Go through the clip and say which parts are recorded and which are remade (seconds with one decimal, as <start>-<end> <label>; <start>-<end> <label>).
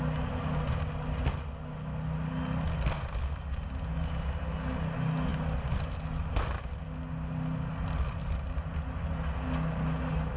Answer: 0.0-10.4 recorded